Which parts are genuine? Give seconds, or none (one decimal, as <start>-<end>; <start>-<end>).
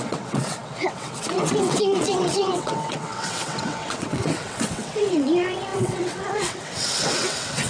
none